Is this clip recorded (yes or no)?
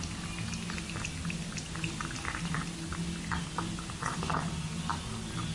yes